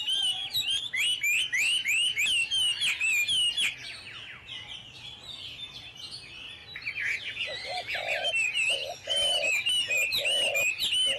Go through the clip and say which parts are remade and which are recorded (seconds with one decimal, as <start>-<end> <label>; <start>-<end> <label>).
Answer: 0.0-11.2 recorded